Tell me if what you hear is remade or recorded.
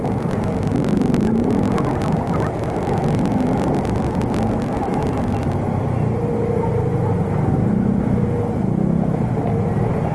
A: recorded